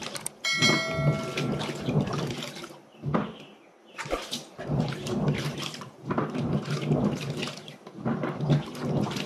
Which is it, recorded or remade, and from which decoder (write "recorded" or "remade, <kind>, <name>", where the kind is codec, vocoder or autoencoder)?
recorded